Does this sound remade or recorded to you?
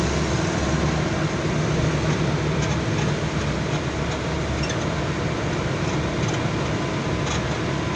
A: recorded